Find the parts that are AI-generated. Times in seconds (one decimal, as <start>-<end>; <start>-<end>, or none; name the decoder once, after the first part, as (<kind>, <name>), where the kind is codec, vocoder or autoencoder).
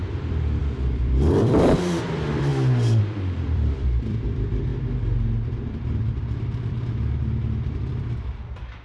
0.0-2.5 (vocoder, BigVGAN v2); 3.0-4.7; 5.7-8.8